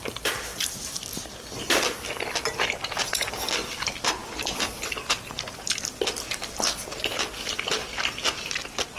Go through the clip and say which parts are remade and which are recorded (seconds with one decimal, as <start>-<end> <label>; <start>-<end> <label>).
0.0-9.0 recorded